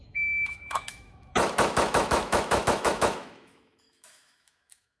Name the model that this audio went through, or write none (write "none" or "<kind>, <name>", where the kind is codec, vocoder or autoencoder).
autoencoder, DAC-VAE